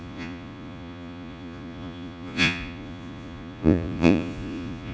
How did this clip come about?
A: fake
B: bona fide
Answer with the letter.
A